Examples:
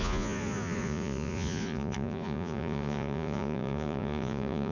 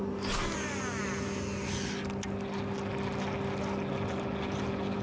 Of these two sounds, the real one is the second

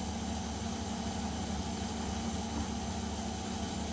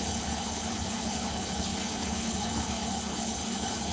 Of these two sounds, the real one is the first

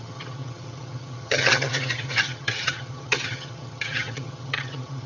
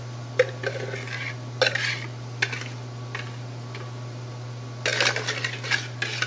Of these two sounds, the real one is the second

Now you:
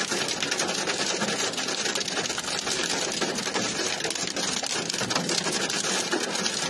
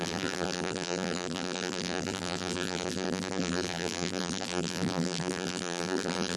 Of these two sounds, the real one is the first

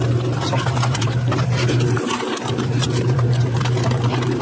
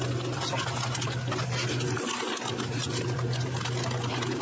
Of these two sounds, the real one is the second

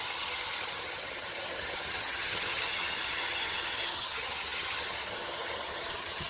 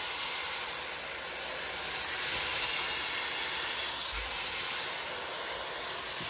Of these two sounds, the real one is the second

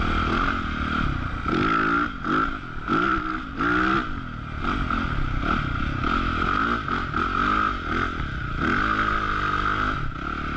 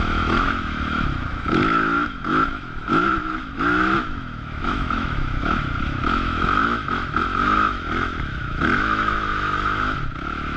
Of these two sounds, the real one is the first